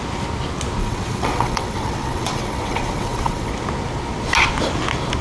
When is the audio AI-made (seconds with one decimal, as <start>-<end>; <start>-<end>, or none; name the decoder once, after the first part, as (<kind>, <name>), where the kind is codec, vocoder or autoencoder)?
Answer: 0.8-3.5 (vocoder, WaveNeXt)